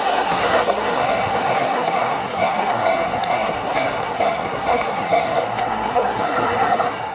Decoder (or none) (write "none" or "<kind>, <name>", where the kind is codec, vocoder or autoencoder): codec, SNAC